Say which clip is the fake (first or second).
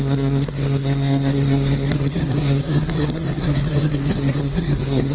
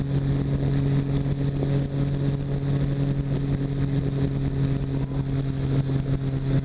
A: first